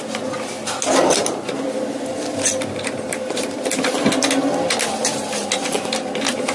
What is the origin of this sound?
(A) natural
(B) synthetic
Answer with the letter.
A